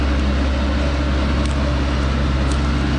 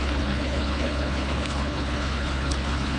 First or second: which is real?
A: first